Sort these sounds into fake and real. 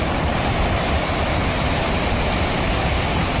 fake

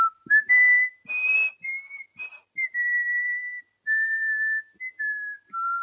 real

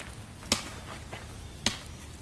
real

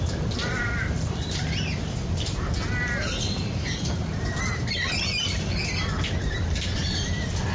real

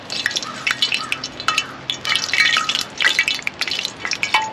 real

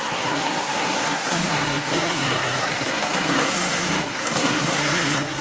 fake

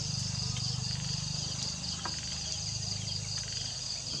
real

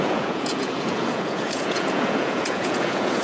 fake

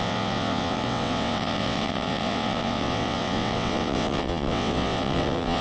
fake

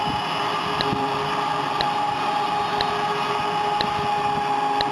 real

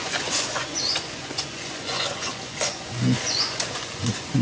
fake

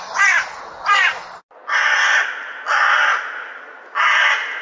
real